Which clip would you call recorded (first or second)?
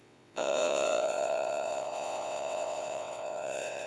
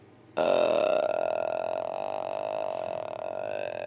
second